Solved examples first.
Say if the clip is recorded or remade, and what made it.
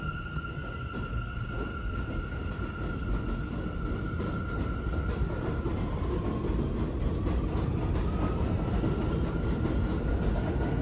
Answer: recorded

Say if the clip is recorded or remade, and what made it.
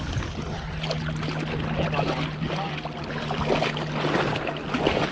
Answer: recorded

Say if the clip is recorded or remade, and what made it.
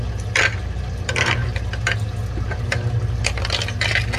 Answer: recorded